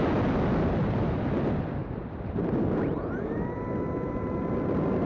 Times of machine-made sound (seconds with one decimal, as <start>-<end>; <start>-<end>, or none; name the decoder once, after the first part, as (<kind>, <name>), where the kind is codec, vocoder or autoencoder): 1.8-5.1 (vocoder, BigVGAN v2)